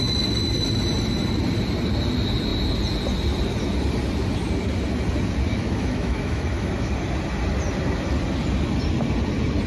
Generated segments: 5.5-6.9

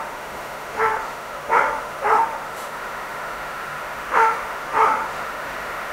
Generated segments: 0.0-5.9

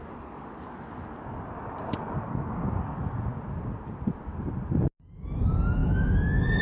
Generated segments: none

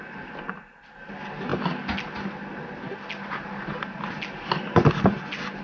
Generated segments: none

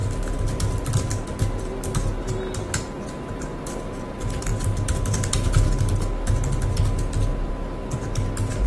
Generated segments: none

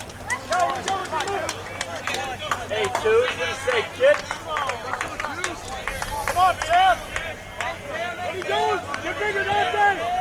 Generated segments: none